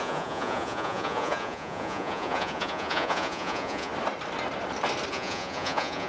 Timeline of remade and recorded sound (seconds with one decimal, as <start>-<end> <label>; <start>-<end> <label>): 0.0-3.9 remade; 3.9-5.1 recorded; 5.1-6.1 remade